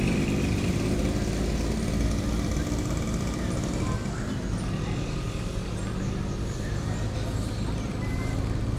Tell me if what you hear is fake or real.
real